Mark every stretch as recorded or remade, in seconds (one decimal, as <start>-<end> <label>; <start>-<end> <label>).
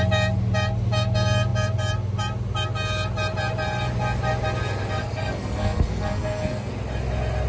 0.0-5.0 recorded; 5.0-6.7 remade; 6.7-7.5 recorded